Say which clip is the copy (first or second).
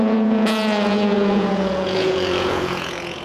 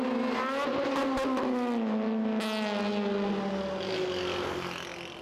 first